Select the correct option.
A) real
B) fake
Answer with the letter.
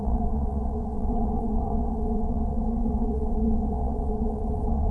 B